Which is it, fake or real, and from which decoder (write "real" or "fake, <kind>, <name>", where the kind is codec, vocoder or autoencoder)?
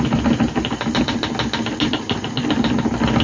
real